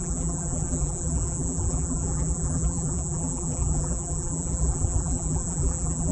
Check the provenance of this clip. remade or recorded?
remade